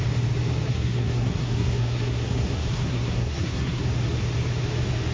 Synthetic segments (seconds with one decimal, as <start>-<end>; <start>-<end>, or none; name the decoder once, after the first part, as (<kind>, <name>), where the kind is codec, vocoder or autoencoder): 0.7-3.8 (codec, SNAC)